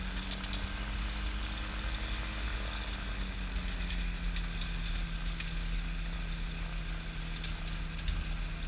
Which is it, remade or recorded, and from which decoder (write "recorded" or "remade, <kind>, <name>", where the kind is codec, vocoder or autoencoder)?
recorded